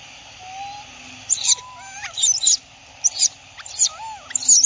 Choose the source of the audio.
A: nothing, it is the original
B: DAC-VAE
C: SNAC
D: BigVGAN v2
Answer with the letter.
A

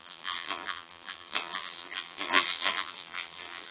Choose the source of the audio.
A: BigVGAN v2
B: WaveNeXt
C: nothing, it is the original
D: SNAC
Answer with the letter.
A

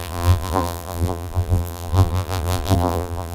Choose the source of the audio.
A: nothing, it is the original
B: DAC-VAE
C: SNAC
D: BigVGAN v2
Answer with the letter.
D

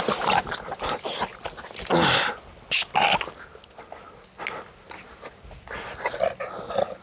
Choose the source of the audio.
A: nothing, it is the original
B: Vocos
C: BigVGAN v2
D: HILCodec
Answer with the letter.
A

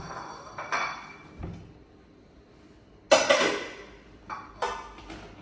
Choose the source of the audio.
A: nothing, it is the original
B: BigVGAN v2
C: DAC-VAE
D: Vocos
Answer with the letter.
A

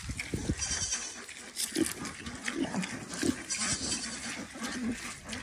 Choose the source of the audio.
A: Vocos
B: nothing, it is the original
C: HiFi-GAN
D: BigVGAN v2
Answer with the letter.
B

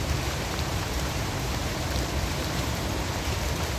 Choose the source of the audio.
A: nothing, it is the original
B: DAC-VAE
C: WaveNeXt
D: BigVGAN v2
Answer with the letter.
D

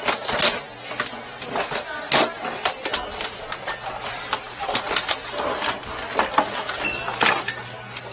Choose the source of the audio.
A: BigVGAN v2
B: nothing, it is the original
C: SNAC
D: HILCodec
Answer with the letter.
B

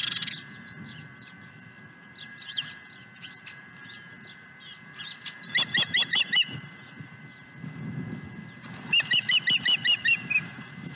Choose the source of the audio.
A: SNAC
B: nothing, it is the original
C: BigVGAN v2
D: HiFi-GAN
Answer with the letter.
C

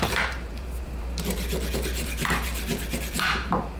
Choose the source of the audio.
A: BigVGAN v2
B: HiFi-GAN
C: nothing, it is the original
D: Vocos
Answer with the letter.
A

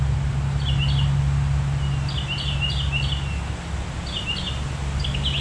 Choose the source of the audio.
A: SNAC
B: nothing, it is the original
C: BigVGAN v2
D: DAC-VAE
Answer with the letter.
B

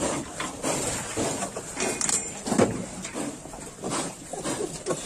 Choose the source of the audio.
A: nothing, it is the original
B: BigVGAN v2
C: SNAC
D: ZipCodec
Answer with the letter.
A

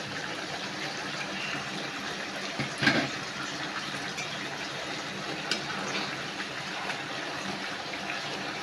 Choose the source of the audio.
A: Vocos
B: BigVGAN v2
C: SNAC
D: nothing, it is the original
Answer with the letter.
B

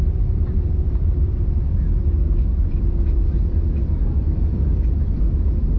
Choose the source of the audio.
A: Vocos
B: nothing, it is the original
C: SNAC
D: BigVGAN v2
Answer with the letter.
D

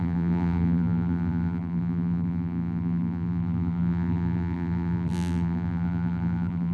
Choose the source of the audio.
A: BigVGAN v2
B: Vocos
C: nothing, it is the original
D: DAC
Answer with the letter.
A